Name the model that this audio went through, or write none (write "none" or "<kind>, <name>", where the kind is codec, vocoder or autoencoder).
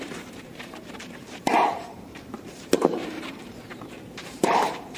vocoder, BigVGAN v2